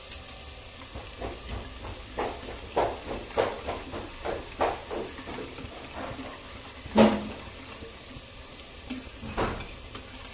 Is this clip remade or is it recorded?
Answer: recorded